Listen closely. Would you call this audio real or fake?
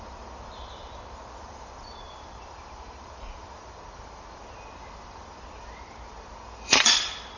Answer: fake